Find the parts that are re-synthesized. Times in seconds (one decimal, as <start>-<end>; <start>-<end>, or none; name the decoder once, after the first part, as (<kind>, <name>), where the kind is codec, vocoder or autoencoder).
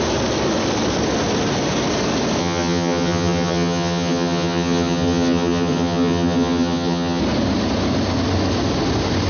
2.4-7.2 (vocoder, HiFi-GAN)